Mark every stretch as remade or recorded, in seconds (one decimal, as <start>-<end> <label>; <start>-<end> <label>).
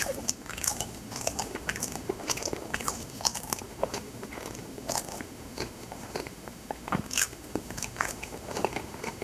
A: 0.0-9.2 remade